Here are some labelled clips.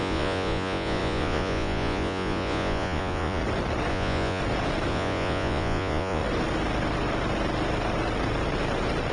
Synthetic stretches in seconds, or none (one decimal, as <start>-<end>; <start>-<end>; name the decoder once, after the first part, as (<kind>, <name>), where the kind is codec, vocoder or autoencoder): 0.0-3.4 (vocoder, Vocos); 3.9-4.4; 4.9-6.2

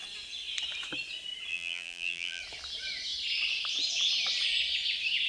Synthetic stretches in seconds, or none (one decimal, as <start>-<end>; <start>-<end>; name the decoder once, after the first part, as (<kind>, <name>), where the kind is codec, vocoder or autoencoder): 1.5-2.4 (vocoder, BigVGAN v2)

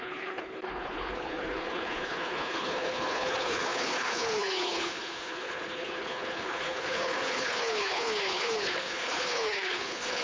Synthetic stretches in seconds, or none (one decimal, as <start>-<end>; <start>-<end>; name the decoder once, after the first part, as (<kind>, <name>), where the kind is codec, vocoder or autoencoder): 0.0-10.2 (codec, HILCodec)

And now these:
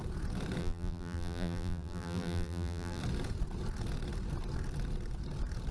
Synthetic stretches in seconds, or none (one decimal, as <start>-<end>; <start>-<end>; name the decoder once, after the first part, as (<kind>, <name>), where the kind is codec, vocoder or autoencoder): 0.6-3.0 (vocoder, BigVGAN v2)